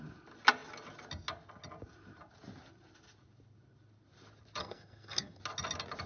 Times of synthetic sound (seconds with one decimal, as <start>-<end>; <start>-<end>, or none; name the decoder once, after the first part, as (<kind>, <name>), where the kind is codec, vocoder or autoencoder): 4.6-5.4 (codec, SNAC)